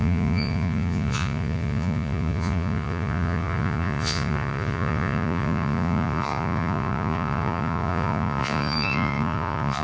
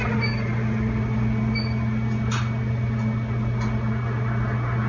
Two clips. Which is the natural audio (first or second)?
second